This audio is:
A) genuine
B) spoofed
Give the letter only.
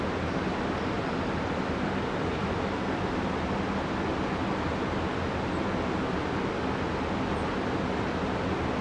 A